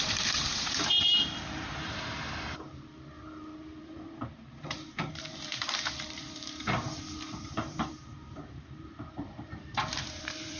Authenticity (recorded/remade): remade